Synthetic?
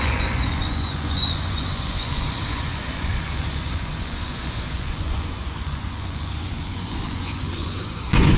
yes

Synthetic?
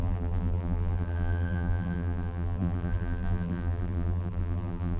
yes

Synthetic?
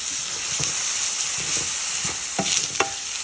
no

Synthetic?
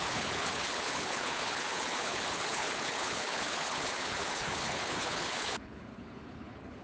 yes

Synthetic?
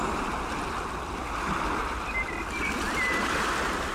no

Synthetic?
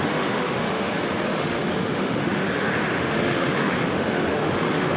yes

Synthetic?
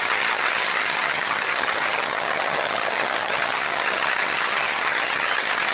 yes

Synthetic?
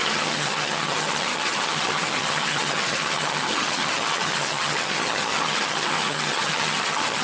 yes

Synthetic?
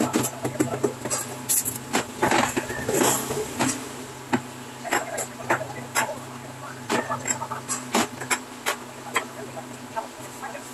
no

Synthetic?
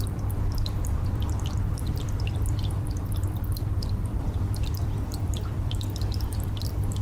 yes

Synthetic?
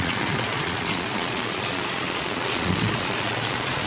yes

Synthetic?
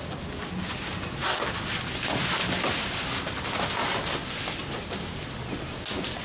no